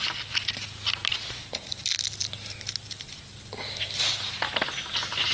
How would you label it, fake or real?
real